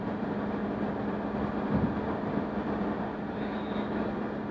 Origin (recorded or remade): recorded